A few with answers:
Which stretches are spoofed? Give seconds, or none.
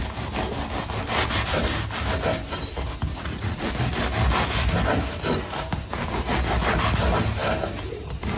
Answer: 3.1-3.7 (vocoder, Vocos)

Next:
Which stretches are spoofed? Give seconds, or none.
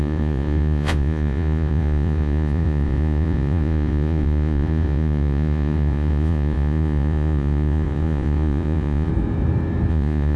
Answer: 0.0-9.1 (vocoder, Vocos); 9.9-10.4